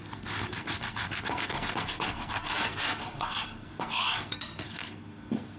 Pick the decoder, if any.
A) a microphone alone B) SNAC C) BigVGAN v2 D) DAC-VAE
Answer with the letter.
B